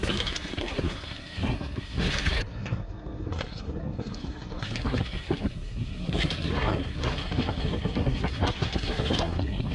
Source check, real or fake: fake